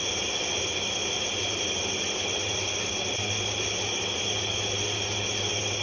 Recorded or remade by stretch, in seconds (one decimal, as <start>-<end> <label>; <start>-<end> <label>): 0.0-5.8 recorded